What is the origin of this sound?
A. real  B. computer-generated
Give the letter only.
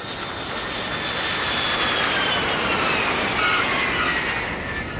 A